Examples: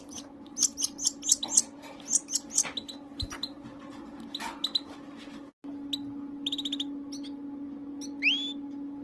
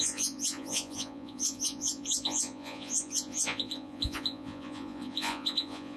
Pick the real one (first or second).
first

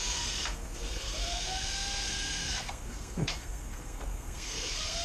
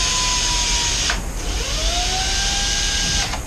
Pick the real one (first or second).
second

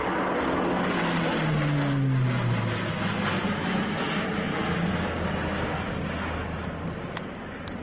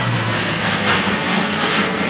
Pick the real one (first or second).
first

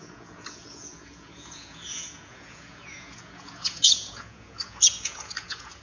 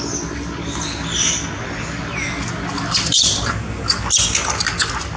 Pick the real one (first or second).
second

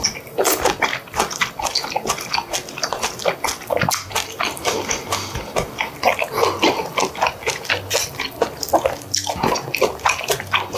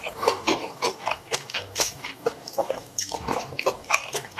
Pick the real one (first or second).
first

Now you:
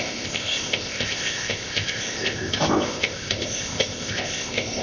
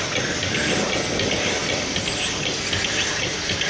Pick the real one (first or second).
second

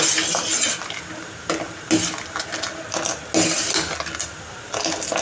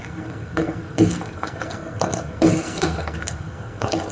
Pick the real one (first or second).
first